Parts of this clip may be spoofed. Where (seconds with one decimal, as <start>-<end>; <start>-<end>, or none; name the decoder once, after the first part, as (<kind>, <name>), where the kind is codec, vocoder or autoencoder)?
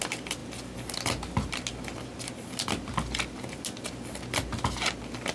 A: none